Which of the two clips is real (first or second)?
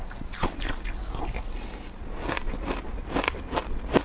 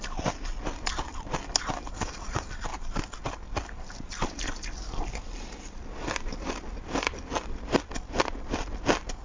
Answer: first